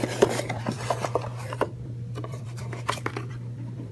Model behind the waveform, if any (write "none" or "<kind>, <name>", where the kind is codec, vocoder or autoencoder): vocoder, BigVGAN v2